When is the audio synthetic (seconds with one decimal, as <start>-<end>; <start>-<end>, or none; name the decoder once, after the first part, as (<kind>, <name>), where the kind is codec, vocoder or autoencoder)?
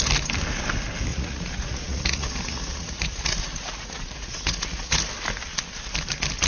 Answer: 1.1-5.0 (vocoder, Vocos)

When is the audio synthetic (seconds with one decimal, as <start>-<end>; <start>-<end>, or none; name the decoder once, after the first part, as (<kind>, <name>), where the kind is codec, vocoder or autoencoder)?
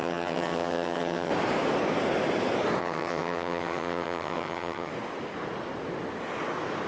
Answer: 0.0-1.3 (vocoder, HiFi-GAN); 2.8-4.9